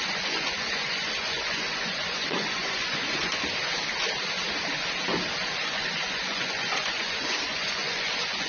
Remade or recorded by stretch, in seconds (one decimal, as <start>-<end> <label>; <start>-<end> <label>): 0.0-3.3 remade; 3.3-5.6 recorded; 5.6-8.5 remade